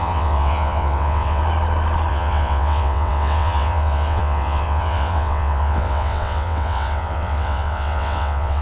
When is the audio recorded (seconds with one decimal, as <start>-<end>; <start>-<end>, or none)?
1.4-2.1